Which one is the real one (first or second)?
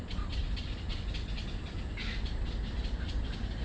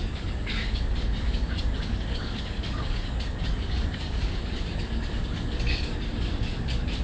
first